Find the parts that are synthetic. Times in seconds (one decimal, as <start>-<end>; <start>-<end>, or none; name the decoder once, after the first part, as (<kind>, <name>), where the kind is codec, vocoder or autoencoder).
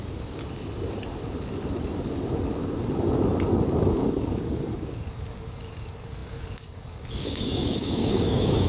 0.0-0.4 (codec, DAC); 3.8-8.7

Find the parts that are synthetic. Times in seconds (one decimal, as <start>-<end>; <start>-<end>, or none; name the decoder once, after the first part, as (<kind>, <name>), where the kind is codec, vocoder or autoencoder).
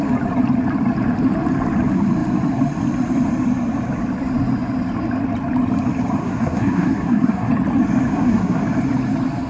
6.2-7.5 (codec, SNAC); 8.1-8.6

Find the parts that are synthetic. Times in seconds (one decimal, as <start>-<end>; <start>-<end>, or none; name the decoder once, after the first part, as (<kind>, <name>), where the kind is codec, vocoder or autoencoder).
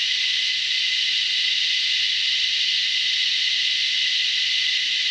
none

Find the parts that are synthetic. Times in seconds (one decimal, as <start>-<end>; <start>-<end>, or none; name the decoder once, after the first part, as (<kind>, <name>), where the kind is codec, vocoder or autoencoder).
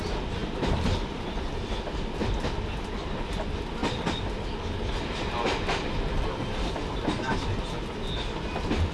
none